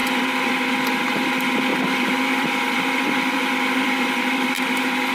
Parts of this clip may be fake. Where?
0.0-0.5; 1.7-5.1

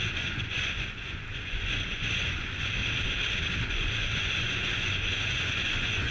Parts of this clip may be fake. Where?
0.0-2.8; 3.7-6.1

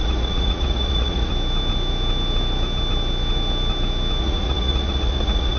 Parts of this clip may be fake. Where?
0.0-1.3; 4.2-5.6